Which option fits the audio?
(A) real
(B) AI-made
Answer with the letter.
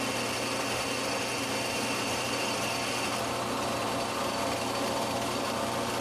A